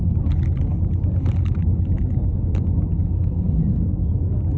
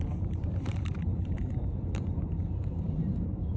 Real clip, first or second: first